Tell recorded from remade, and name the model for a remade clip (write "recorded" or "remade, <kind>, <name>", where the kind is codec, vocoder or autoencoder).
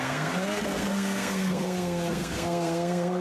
remade, codec, SNAC